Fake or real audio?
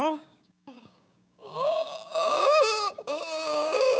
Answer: fake